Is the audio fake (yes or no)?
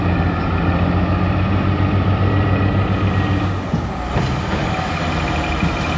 no